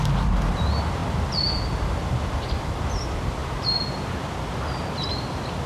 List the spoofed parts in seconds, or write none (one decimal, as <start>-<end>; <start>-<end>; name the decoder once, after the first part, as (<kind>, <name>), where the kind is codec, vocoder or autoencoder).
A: none

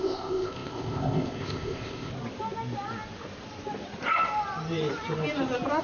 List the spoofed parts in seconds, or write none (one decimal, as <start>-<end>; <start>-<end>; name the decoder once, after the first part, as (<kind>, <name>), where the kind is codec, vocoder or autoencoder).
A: 0.0-2.1 (codec, ZipCodec)